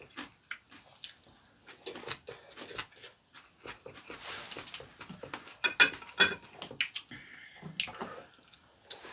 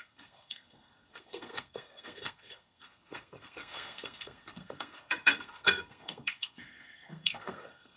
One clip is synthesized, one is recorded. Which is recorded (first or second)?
first